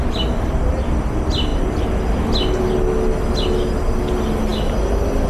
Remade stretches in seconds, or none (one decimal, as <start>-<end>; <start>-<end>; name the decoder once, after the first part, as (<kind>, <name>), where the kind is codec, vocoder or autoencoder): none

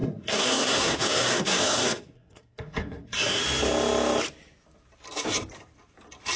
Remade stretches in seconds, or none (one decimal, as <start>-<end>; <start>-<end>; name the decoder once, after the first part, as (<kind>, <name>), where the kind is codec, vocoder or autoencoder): 0.0-3.4 (codec, SNAC)

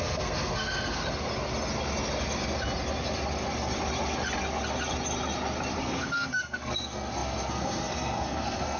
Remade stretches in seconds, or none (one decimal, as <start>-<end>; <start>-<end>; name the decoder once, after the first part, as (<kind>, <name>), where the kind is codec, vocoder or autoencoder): 0.0-1.0 (codec, SNAC); 5.8-8.8

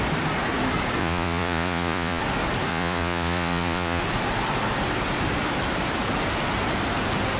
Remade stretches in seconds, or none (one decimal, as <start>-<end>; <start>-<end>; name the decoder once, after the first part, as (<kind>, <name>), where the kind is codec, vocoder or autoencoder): 1.0-2.2 (vocoder, Vocos); 2.7-4.0

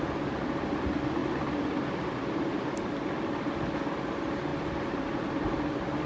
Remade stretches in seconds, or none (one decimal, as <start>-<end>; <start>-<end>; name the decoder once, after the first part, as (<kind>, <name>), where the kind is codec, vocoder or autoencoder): none

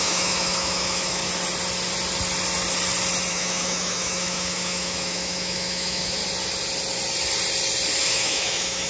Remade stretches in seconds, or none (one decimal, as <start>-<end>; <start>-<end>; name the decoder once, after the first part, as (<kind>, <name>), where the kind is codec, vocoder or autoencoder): 0.0-1.2 (autoencoder, DAC-VAE); 3.3-6.2; 8.0-8.9